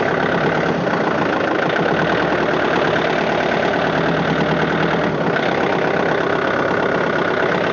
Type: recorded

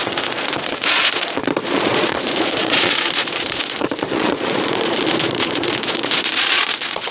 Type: remade